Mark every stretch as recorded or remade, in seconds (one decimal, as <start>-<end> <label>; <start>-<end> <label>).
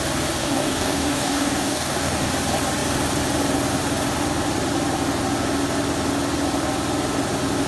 0.0-0.4 recorded; 0.4-2.3 remade; 2.3-7.7 recorded